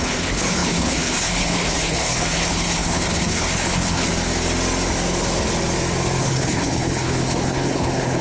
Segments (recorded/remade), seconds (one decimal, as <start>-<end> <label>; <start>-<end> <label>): 0.0-4.1 remade; 4.1-6.2 recorded; 6.2-8.2 remade